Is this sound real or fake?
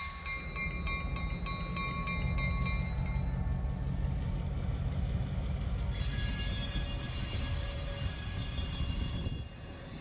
real